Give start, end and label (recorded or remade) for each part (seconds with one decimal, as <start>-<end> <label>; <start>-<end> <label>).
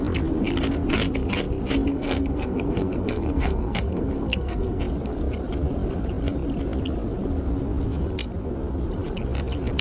0.0-1.9 recorded; 1.9-4.8 remade; 4.8-9.8 recorded